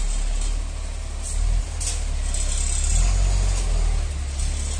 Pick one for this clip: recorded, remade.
recorded